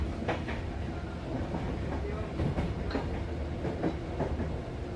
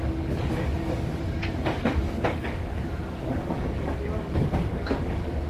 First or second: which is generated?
second